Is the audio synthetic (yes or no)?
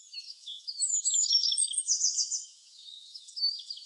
yes